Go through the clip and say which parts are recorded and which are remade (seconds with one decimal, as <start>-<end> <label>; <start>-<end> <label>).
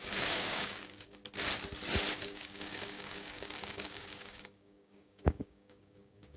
0.0-1.2 remade; 1.2-2.1 recorded; 2.1-6.4 remade